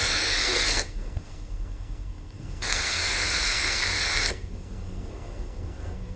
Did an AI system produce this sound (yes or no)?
yes